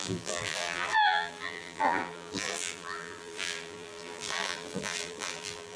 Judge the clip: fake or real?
fake